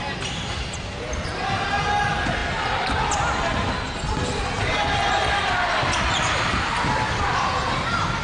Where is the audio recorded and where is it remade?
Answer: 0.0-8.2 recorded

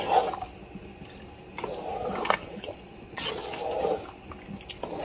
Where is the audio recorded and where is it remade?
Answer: 0.0-2.4 recorded; 2.4-3.3 remade; 3.3-5.0 recorded

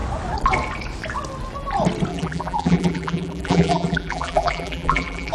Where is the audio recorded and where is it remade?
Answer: 0.0-2.1 recorded; 2.1-5.3 remade

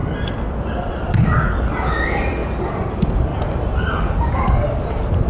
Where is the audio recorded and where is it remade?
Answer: 0.0-0.9 remade; 0.9-2.4 recorded; 2.4-2.9 remade; 2.9-3.3 recorded; 3.3-4.4 remade; 4.4-5.3 recorded